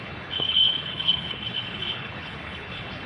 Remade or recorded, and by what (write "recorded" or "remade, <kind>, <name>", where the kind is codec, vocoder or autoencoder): remade, codec, HILCodec